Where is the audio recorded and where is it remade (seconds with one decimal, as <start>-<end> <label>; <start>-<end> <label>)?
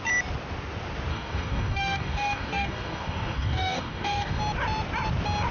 0.0-1.1 recorded; 1.1-4.4 remade; 4.4-5.5 recorded